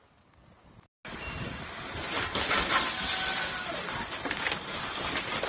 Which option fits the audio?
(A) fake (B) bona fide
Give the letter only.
B